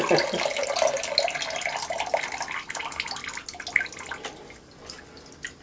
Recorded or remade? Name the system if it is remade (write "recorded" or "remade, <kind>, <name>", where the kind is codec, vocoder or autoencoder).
recorded